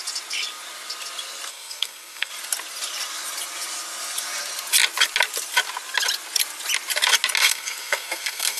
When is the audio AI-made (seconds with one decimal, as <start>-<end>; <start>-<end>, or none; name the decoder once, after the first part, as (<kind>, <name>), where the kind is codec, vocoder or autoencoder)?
1.5-2.3 (codec, SNAC); 7.4-8.6